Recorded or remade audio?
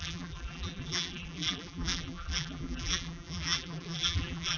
remade